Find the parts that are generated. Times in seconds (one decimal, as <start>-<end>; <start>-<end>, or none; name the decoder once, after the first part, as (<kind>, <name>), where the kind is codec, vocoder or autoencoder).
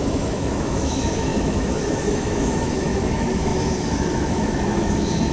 0.0-5.3 (autoencoder, DAC-VAE)